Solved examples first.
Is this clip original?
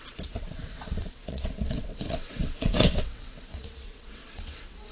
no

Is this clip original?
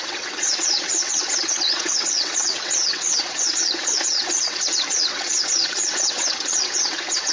no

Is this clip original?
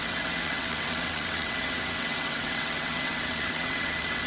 no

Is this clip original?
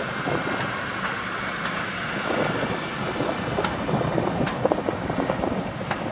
yes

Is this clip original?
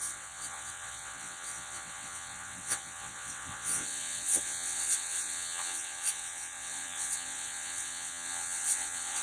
no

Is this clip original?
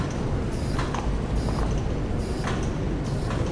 yes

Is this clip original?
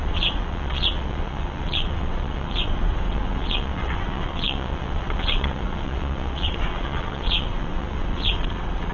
no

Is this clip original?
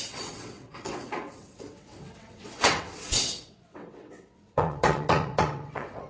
no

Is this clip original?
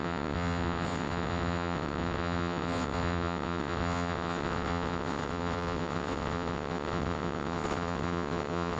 no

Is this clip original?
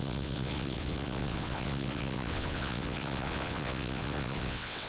no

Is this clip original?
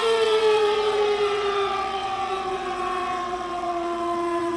no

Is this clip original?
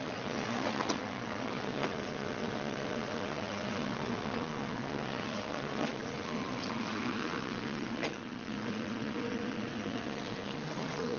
no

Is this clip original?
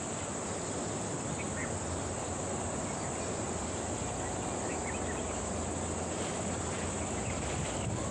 yes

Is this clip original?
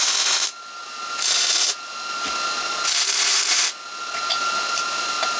yes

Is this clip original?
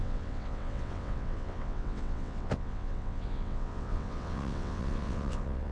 no